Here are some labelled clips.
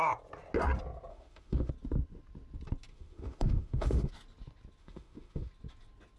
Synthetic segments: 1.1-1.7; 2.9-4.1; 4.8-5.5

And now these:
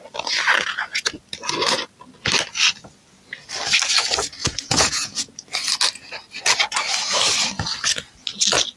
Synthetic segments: 4.4-5.3

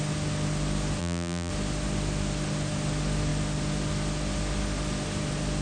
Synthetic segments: 1.0-1.5

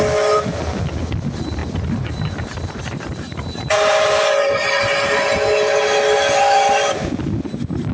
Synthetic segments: 1.6-4.8